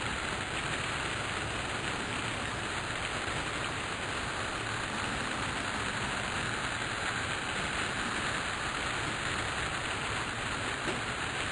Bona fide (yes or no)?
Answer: no